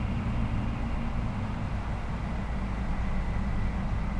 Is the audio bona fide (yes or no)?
yes